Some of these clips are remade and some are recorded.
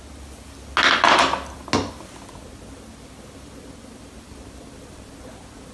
recorded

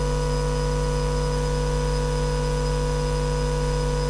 recorded